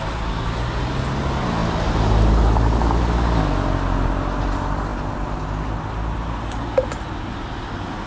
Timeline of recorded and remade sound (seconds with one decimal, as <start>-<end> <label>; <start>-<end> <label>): 0.0-8.1 recorded